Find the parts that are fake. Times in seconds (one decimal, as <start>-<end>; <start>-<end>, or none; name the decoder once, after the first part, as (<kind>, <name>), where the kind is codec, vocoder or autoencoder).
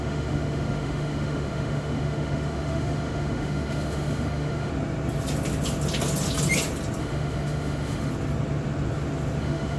0.0-4.7 (autoencoder, DAC-VAE); 7.0-8.1; 9.4-9.8